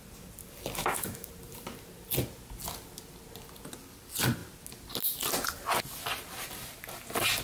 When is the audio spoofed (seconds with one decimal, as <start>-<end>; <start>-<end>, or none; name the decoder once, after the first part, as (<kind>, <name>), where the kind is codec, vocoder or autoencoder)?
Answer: 0.8-1.3 (autoencoder, DAC-VAE)